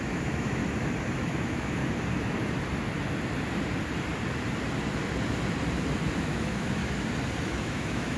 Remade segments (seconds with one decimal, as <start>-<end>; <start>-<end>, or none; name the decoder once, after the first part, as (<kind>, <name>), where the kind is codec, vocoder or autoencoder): 0.0-0.6 (autoencoder, DAC-VAE); 1.2-1.8; 6.2-6.8; 7.4-8.2